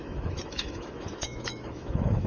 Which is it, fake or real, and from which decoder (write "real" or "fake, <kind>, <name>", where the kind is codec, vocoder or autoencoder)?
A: fake, autoencoder, DAC-VAE